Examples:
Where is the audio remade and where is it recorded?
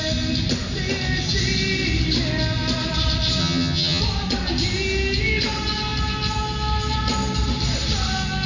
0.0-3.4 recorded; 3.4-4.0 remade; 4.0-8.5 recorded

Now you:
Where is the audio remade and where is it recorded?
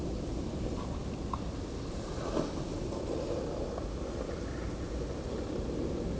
0.0-6.2 recorded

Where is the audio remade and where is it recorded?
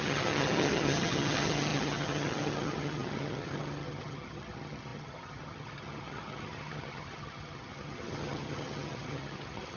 0.0-9.8 remade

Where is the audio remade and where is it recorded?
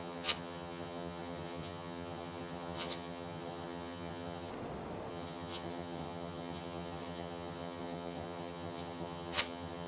0.0-4.5 remade; 4.5-5.1 recorded; 5.1-9.9 remade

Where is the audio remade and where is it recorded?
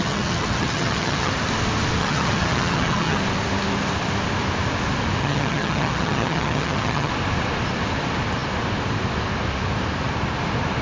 0.0-1.3 remade; 1.3-2.0 recorded; 2.0-3.2 remade; 3.2-5.2 recorded; 5.2-7.1 remade; 7.1-10.8 recorded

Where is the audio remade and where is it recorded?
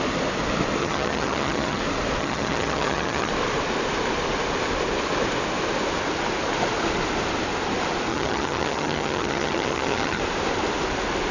0.0-0.8 recorded; 0.8-1.8 remade; 1.8-2.2 recorded; 2.2-3.3 remade; 3.3-8.1 recorded; 8.1-10.2 remade; 10.2-11.3 recorded